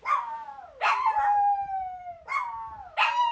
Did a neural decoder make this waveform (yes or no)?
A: no